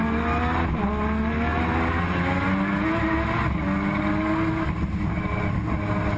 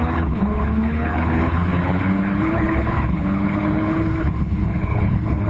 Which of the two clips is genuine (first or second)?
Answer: first